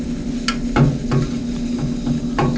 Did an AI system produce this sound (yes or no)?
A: no